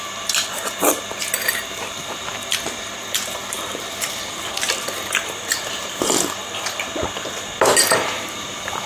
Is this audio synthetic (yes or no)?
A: yes